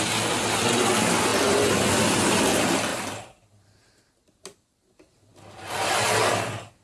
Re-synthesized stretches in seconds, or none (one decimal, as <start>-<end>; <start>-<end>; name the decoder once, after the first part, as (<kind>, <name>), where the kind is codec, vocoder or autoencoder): none